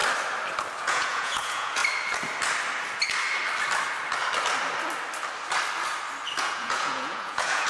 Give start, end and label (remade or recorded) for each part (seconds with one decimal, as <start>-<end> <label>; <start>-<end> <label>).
0.0-0.8 recorded; 0.8-1.8 remade; 1.8-6.4 recorded; 6.4-7.7 remade